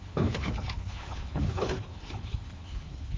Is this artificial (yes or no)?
yes